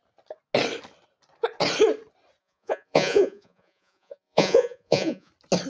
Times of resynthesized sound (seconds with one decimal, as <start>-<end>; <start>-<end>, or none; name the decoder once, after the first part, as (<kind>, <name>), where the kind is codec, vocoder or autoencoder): 2.4-5.3 (vocoder, Vocos)